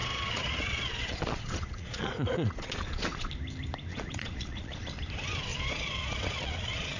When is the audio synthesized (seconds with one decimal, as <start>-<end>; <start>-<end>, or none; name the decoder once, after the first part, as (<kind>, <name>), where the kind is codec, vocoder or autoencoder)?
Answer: 0.0-3.3 (vocoder, Vocos); 3.9-4.8; 5.5-7.0

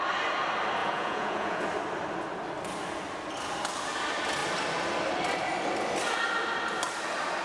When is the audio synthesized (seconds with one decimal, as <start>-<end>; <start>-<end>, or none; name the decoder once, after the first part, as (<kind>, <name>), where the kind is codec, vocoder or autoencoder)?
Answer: 0.8-1.6 (vocoder, Vocos)

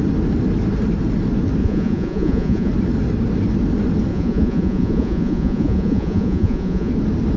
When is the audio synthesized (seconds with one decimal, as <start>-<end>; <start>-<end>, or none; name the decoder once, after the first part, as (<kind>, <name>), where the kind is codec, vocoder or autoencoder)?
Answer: 1.6-2.7 (vocoder, Vocos); 4.1-6.9

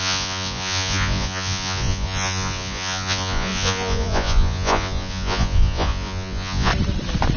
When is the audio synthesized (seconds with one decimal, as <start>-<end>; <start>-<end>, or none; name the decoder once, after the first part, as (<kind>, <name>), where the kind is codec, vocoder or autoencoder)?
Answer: 0.0-6.7 (vocoder, Vocos)

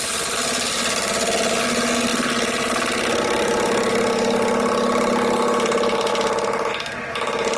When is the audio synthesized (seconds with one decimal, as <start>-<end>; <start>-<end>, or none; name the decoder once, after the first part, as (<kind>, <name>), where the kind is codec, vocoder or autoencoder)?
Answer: none

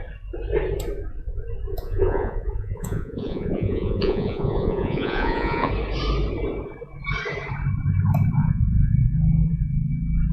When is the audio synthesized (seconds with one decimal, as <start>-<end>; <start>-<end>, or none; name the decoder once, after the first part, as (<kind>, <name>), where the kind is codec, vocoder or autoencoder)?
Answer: 1.7-5.7 (vocoder, Vocos); 8.4-9.9